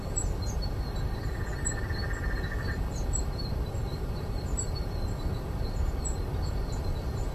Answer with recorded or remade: recorded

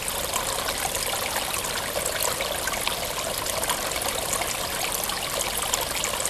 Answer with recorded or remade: recorded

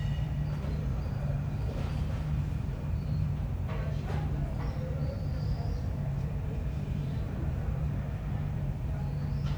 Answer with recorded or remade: remade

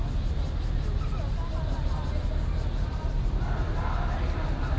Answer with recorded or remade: recorded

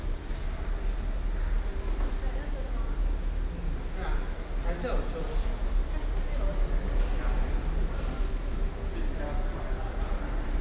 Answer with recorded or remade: recorded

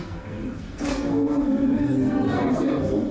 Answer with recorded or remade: remade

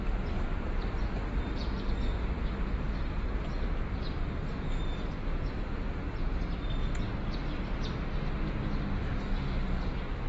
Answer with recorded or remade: recorded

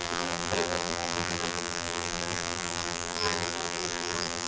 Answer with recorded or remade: remade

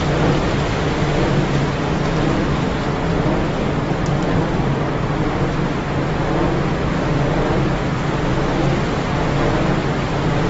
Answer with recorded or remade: recorded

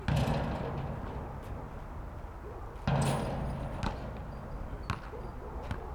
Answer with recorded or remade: recorded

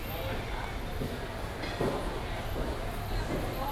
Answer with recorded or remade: recorded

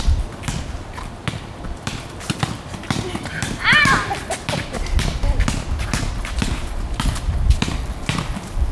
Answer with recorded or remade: remade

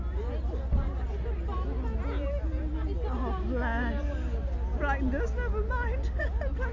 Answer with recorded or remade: recorded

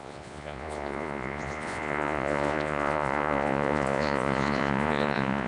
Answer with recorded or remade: remade